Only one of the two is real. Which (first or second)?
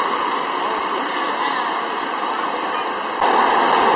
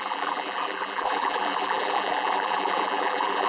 first